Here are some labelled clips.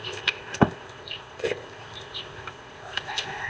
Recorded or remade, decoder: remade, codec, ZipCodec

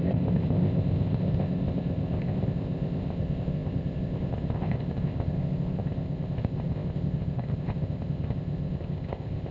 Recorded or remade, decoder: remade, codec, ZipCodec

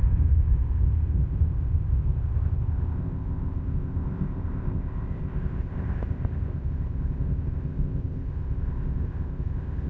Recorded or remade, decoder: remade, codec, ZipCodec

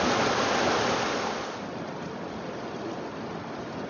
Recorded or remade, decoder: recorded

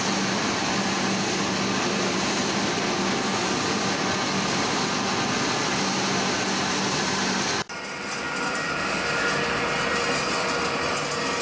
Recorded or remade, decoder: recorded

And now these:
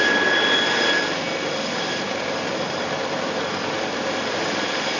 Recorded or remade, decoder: recorded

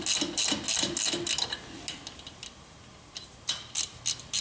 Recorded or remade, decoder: recorded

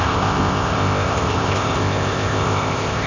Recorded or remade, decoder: remade, codec, ZipCodec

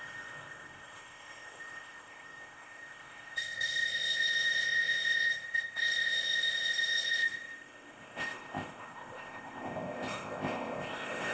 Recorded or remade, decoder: remade, codec, ZipCodec